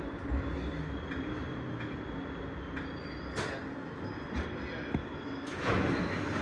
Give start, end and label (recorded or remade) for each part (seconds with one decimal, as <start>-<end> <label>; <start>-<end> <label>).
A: 0.0-5.0 recorded; 5.0-6.0 remade; 6.0-6.4 recorded